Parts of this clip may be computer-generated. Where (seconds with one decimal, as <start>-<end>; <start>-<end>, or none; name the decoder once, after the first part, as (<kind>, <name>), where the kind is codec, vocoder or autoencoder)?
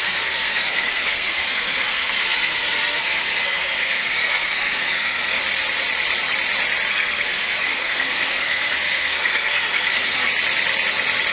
0.0-5.4 (codec, SNAC); 6.9-10.3